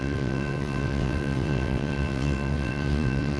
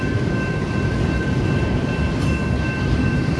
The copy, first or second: first